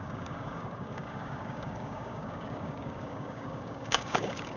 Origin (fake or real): fake